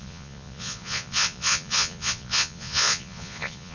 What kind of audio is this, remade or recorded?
remade